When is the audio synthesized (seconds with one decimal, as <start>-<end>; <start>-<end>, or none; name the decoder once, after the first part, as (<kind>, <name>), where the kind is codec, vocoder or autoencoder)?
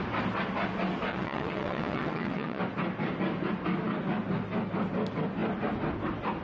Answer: 1.1-2.6 (vocoder, WaveNeXt)